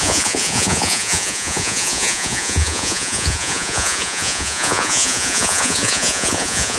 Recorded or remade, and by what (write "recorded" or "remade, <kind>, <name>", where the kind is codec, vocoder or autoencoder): remade, vocoder, Vocos